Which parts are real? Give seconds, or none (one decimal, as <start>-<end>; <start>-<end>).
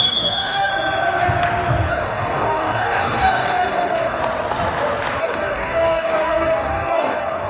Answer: 0.7-1.9; 4.2-5.2